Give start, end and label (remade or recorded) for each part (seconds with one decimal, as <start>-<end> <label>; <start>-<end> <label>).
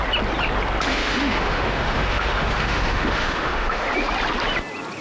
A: 0.0-0.9 recorded; 0.9-3.9 remade; 3.9-5.0 recorded